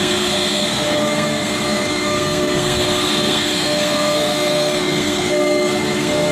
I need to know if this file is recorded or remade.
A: remade